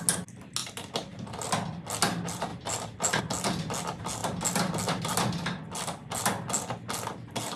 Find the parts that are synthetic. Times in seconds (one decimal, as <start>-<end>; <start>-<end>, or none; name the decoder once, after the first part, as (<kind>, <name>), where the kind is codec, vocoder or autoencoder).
none